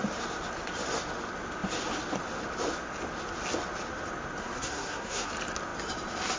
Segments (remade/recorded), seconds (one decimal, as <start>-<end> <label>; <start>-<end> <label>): 0.0-4.4 recorded; 4.4-5.3 remade; 5.3-6.4 recorded